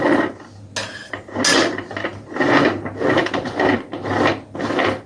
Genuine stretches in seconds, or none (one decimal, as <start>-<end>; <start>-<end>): 0.0-5.1